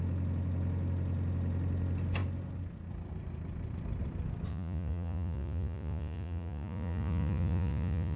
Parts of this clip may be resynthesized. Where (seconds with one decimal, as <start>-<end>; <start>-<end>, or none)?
4.5-8.2